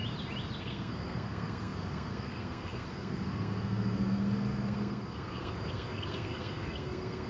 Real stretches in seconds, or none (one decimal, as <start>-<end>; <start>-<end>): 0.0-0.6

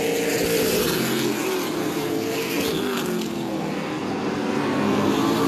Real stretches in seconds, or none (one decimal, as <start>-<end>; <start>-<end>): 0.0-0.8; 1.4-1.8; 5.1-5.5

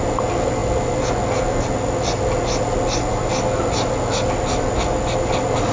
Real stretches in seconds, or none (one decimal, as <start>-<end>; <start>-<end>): 0.0-5.7

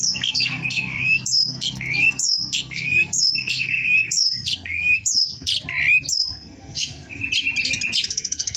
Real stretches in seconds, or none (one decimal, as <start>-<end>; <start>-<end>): 5.5-6.1; 7.2-8.1